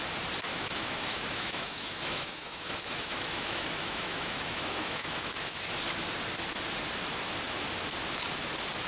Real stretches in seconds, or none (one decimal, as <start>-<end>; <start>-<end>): 0.0-0.5; 5.6-8.9

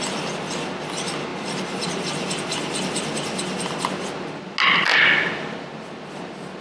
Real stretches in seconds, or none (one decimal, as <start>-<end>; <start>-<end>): 0.0-6.6

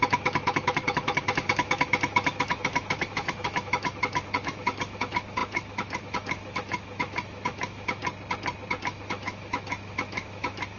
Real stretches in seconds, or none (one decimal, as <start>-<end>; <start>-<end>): 8.0-8.8

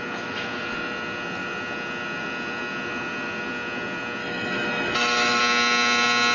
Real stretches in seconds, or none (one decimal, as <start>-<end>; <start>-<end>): 0.0-4.2; 5.4-6.3

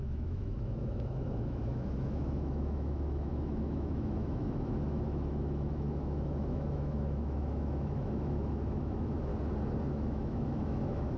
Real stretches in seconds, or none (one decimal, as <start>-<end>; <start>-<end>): 9.3-9.9

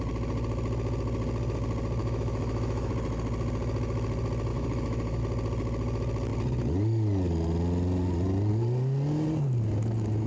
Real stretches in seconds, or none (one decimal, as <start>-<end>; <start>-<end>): 0.0-2.0; 2.9-4.5; 5.2-10.3

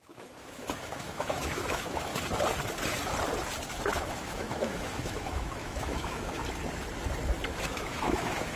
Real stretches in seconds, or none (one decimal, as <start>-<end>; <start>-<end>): 2.1-3.9; 6.4-7.6

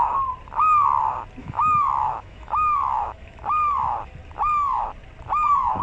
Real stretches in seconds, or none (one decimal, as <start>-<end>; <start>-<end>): 0.0-1.4; 3.4-5.8